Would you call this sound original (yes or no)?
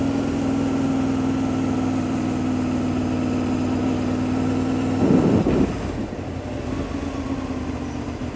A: yes